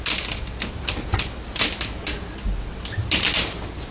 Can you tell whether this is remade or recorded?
recorded